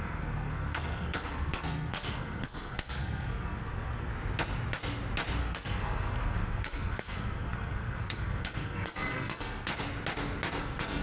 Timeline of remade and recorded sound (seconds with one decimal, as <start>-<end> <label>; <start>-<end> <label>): 0.0-4.1 remade; 4.1-5.4 recorded; 5.4-9.7 remade; 9.7-10.6 recorded; 10.6-11.0 remade